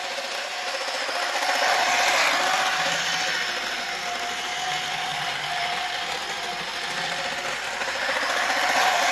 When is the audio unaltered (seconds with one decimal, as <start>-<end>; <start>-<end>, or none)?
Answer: 0.0-9.1